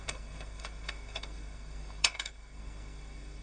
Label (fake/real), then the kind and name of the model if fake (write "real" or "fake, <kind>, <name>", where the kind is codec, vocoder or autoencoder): fake, codec, SNAC